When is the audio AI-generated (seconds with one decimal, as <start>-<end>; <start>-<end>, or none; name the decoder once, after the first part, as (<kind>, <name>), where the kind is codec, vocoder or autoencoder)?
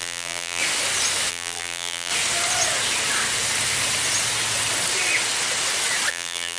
0.0-0.6 (vocoder, BigVGAN v2); 1.3-2.1; 6.1-6.6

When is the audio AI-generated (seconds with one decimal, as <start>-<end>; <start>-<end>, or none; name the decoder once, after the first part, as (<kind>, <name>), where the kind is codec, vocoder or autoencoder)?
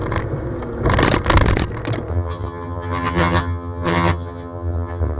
2.1-5.2 (vocoder, HiFi-GAN)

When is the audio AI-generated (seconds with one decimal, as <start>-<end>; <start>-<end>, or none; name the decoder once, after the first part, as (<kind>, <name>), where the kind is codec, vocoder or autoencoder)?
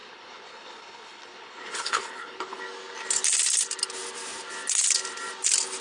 0.0-2.6 (codec, HILCodec)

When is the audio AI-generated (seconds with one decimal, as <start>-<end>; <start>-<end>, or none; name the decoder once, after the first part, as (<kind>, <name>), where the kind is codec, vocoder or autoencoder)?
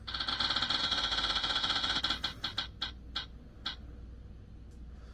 0.8-2.0 (autoencoder, DAC-VAE)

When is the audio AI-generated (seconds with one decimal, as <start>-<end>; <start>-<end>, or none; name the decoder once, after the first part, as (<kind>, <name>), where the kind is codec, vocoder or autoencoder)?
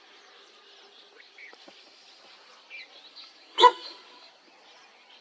3.1-4.3 (codec, DAC)